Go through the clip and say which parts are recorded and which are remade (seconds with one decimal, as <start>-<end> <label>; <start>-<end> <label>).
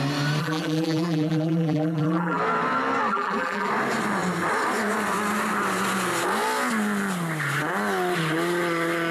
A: 0.0-0.4 recorded; 0.4-2.4 remade; 2.4-3.1 recorded; 3.1-3.7 remade; 3.7-9.1 recorded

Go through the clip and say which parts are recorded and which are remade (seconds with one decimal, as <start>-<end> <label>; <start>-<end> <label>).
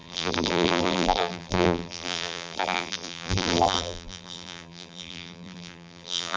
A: 0.0-6.4 remade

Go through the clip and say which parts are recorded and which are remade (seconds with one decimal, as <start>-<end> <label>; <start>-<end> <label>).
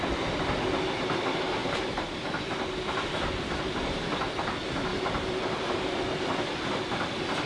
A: 0.0-1.6 recorded; 1.6-4.0 remade; 4.0-4.9 recorded; 4.9-6.3 remade; 6.3-7.5 recorded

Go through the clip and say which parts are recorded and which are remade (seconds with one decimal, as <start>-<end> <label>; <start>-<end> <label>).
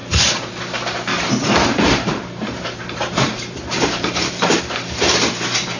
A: 0.0-1.1 recorded; 1.1-4.6 remade; 4.6-5.8 recorded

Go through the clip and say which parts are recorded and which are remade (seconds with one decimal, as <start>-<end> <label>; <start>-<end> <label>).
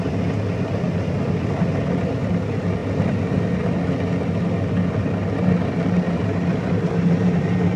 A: 0.0-6.5 recorded; 6.5-7.3 remade; 7.3-7.8 recorded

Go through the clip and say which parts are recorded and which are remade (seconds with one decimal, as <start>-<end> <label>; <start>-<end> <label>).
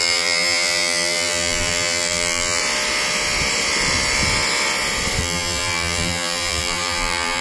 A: 0.0-2.6 remade; 2.6-5.2 recorded; 5.2-7.4 remade